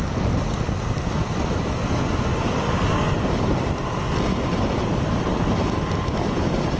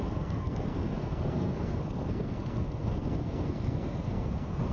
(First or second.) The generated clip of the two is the second